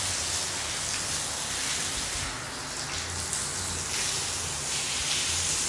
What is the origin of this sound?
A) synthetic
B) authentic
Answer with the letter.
B